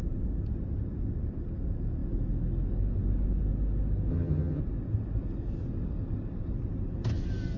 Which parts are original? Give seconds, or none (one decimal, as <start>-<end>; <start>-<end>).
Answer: 0.0-4.1; 4.6-7.6